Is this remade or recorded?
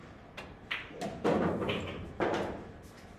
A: remade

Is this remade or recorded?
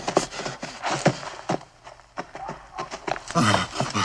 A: recorded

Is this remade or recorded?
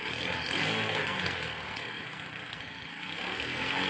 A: remade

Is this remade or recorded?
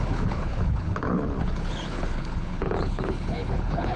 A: remade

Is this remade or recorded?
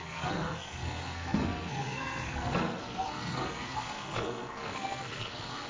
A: remade